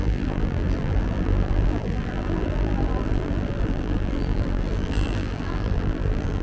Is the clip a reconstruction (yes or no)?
yes